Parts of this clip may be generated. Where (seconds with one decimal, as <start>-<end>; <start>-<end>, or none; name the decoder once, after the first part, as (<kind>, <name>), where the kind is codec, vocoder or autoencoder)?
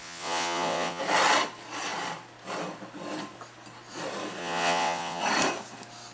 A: 0.0-1.0 (vocoder, WaveNeXt); 4.4-5.2